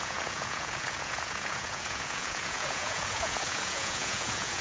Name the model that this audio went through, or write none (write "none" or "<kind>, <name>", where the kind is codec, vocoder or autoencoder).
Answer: vocoder, Vocos